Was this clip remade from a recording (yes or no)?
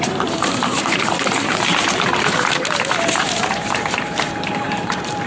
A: yes